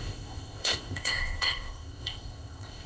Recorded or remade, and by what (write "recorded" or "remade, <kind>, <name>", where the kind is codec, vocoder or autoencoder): remade, codec, ZipCodec